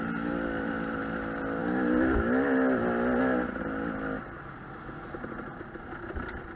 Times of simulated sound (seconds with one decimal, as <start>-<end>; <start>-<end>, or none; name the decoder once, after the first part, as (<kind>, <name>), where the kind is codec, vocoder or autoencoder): none